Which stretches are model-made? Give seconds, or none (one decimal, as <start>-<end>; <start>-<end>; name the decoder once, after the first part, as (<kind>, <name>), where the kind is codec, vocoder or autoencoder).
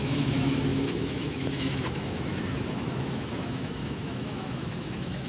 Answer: 0.0-5.3 (autoencoder, DAC-VAE)